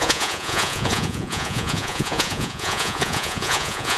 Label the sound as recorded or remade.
remade